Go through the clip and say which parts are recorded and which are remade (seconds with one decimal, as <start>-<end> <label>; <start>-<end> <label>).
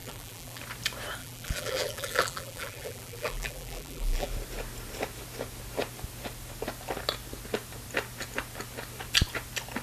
0.0-0.6 remade; 0.6-1.2 recorded; 1.2-4.3 remade; 4.3-9.8 recorded